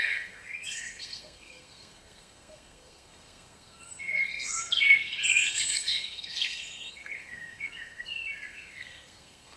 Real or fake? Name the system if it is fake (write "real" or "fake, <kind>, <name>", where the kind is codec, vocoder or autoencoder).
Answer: fake, codec, SNAC